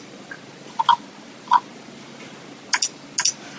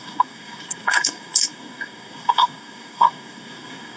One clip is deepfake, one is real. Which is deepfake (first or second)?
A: second